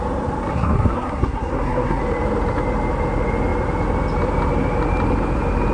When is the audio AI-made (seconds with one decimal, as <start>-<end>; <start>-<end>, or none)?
0.5-2.0